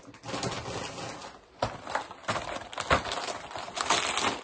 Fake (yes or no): no